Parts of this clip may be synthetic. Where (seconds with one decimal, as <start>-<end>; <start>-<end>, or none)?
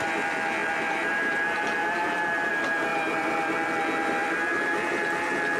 0.6-2.5; 2.9-3.7; 4.2-4.9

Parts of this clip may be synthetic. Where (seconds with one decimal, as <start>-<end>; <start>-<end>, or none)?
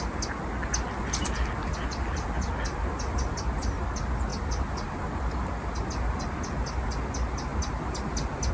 none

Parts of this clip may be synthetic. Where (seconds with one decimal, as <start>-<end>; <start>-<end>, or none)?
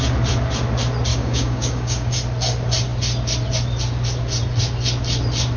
1.1-2.1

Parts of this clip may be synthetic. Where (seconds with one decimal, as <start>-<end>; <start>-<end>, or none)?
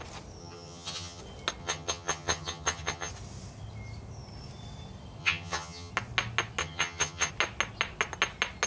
0.4-1.2; 1.6-3.1; 5.2-5.9; 6.6-7.3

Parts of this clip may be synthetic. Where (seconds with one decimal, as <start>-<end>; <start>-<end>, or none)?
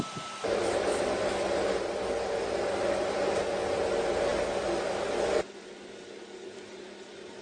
none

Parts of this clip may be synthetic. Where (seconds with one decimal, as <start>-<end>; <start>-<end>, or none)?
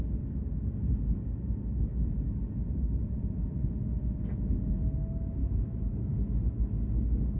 1.9-3.7; 5.4-6.1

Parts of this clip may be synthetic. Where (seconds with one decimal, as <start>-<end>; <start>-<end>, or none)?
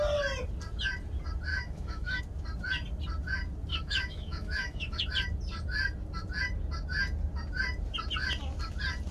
1.5-2.2; 3.7-5.0